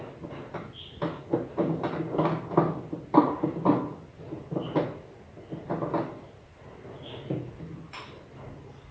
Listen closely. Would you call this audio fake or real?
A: real